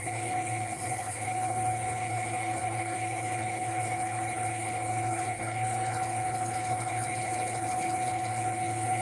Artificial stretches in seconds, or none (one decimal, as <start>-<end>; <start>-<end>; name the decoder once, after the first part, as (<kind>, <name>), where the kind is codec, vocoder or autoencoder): 0.0-9.0 (codec, HILCodec)